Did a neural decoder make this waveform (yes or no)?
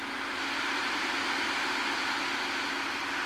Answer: no